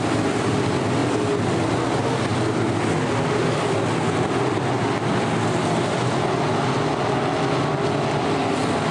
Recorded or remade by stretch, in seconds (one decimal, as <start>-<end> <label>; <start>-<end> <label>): 0.0-8.9 recorded